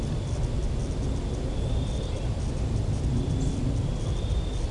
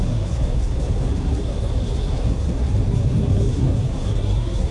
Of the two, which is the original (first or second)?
first